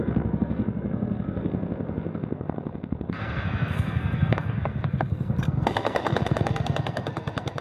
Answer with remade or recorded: remade